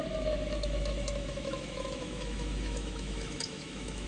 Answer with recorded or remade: remade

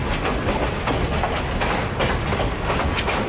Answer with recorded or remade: recorded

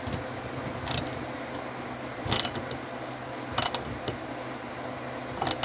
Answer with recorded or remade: recorded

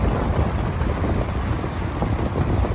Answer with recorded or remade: recorded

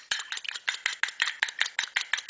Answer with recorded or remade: recorded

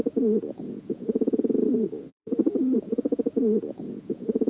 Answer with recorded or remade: remade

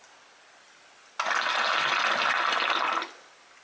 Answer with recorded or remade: recorded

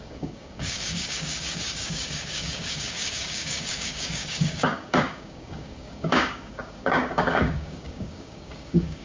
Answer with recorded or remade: remade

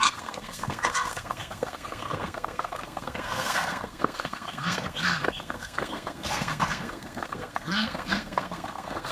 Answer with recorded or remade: remade